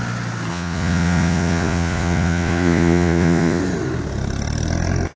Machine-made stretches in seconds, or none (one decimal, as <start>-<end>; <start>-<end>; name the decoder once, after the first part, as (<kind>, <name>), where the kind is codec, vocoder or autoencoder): 0.5-3.6 (vocoder, Vocos)